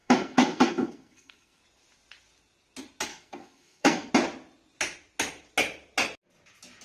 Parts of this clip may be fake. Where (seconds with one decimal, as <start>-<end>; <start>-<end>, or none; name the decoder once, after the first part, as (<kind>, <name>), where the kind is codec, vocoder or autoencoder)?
0.0-1.6 (codec, SNAC); 3.1-4.1